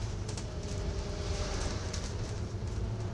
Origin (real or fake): fake